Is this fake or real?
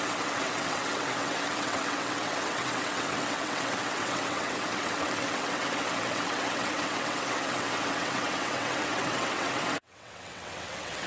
fake